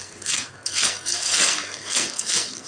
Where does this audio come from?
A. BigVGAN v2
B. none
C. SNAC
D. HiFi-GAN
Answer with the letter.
C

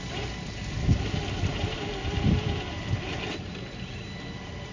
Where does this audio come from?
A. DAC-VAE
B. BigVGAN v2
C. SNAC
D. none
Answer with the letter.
D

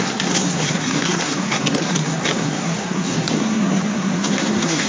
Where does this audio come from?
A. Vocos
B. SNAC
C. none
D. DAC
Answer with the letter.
B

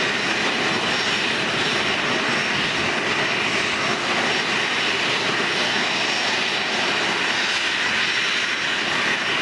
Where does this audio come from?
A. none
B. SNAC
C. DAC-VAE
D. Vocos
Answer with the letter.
A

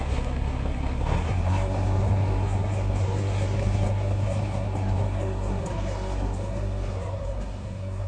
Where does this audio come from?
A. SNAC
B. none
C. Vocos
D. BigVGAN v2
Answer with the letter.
A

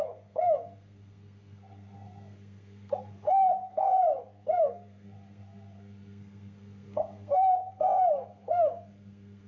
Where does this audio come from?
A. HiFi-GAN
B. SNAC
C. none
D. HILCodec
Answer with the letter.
B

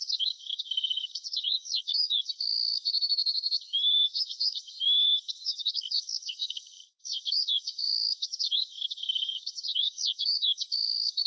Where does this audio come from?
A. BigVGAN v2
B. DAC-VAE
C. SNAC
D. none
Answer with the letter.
C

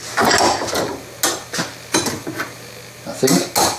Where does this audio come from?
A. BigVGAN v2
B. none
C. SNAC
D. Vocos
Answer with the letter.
B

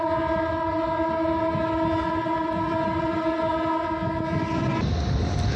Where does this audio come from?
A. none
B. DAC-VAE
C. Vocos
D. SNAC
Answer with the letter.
A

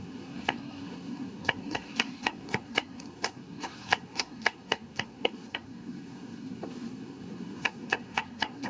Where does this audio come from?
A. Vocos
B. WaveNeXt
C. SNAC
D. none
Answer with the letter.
C